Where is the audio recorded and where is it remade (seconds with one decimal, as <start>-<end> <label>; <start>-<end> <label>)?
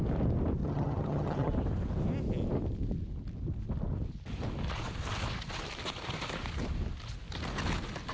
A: 0.0-0.6 recorded; 0.6-1.5 remade; 1.5-8.1 recorded